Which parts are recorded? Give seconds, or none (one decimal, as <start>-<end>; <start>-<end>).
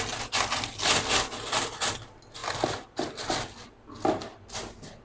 0.0-5.0